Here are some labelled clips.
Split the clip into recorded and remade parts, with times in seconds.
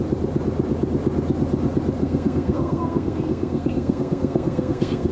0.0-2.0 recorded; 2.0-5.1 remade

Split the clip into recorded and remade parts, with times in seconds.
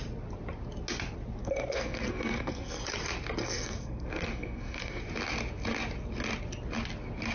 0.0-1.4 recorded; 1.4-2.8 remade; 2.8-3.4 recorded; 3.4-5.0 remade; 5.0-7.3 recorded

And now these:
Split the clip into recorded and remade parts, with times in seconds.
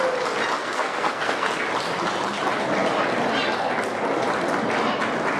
0.0-0.6 recorded; 0.6-1.5 remade; 1.5-5.4 recorded